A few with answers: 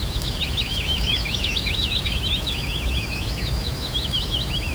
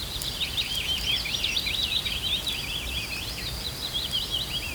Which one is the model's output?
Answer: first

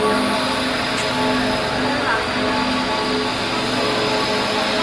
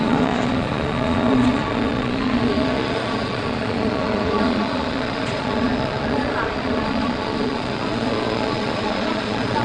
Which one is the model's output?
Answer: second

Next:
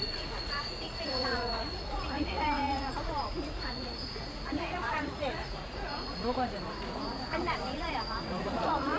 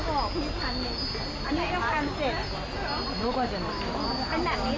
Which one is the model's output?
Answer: first